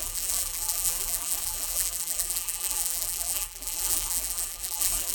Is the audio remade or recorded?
remade